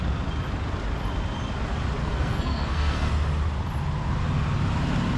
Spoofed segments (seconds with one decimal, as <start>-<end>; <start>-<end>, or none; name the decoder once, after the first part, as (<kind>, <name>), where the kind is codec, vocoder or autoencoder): 2.0-3.1 (codec, SNAC)